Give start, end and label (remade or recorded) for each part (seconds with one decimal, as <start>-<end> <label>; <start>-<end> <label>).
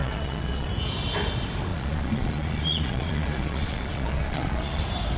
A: 0.0-0.7 remade; 0.7-1.7 recorded; 1.7-4.8 remade; 4.8-5.2 recorded